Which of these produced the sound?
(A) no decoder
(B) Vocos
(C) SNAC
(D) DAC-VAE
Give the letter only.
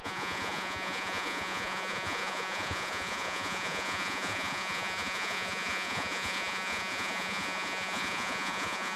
B